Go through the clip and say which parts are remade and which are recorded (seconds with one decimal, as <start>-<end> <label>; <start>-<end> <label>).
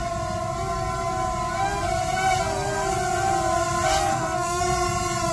0.0-4.1 recorded; 4.1-4.6 remade; 4.6-5.3 recorded